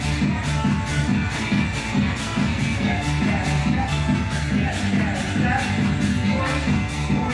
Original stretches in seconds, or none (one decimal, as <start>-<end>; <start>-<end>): 0.0-0.9; 3.2-3.6; 4.7-6.1